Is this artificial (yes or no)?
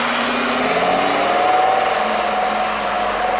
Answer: no